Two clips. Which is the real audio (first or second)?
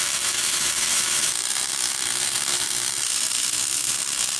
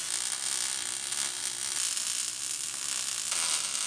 second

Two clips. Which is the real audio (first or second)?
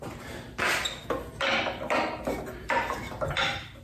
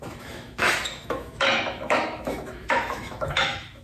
first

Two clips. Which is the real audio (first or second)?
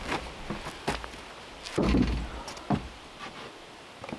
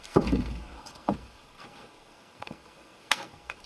first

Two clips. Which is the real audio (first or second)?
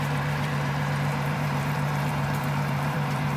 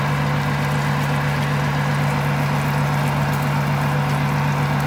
second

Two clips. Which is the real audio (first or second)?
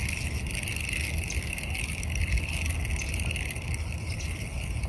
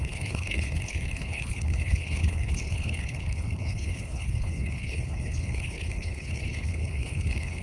first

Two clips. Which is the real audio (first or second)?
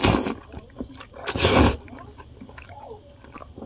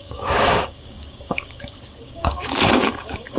first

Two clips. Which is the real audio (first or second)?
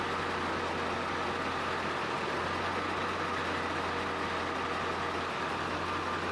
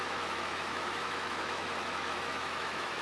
first